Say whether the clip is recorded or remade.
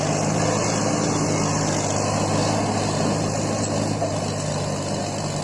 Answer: recorded